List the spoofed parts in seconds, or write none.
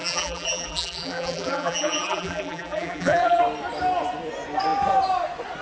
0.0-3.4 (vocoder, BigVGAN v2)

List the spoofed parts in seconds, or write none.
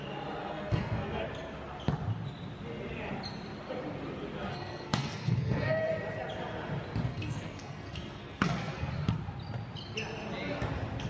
0.4-1.2 (codec, SNAC); 4.5-5.9; 7.1-8.9